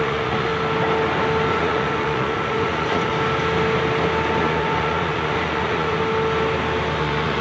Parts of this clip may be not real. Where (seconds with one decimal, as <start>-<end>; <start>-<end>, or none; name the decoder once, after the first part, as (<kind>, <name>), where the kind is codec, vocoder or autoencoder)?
0.0-0.5 (vocoder, Vocos); 1.5-3.1; 4.4-6.0; 7.0-7.4